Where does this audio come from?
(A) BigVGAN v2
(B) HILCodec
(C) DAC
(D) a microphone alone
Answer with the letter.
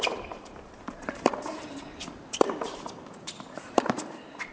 A